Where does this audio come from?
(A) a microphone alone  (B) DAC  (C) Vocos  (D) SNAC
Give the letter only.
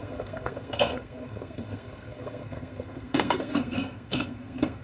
D